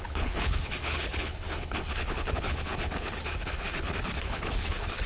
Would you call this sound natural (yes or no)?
no